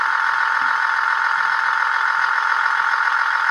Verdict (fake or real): real